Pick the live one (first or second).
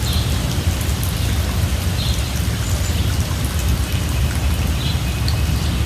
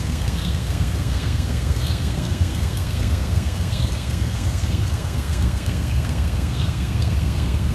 first